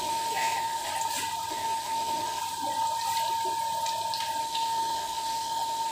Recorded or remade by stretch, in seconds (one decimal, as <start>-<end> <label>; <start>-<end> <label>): 0.0-0.9 remade; 0.9-1.5 recorded; 1.5-2.4 remade; 2.4-4.4 recorded; 4.4-5.9 remade

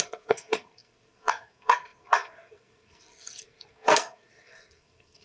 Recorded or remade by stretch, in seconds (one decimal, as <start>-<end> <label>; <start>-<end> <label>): 0.0-5.2 remade

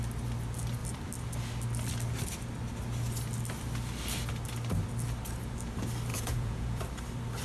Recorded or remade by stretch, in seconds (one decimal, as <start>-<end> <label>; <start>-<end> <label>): 0.0-6.1 recorded; 6.1-6.8 remade; 6.8-7.4 recorded